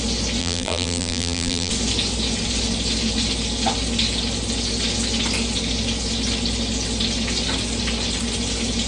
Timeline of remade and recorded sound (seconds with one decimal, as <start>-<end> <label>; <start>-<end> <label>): 0.0-0.4 recorded; 0.4-1.7 remade; 1.7-8.9 recorded